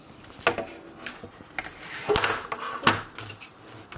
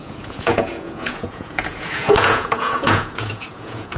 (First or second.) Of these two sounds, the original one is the first